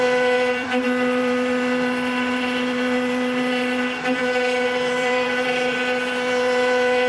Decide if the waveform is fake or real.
fake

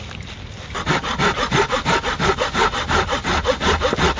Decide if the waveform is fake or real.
real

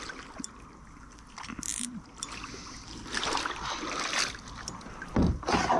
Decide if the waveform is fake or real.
real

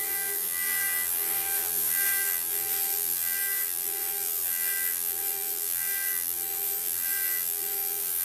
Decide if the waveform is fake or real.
fake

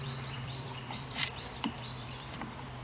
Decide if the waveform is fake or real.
fake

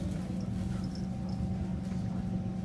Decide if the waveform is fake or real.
real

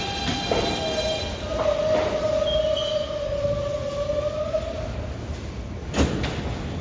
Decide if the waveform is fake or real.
real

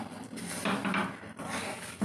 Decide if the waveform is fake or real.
fake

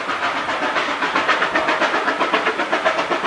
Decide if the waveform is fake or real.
real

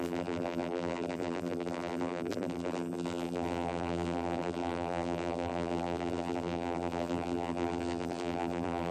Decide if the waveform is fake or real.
fake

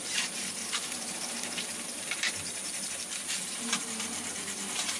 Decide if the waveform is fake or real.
fake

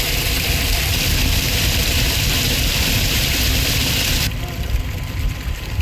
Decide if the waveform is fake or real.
fake